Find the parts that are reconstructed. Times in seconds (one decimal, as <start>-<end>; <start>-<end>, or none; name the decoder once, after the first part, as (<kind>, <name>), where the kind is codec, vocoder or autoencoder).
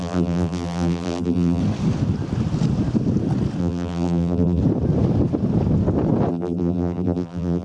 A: 0.0-1.6 (vocoder, BigVGAN v2); 3.6-4.6; 6.3-7.6